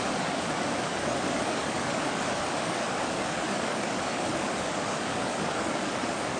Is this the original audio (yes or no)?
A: no